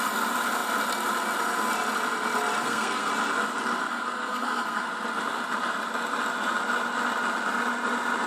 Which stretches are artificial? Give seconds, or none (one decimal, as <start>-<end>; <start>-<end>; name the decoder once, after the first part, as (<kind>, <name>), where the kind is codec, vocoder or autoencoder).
2.6-3.1 (codec, SNAC); 3.8-4.9